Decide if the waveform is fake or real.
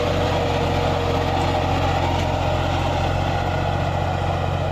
real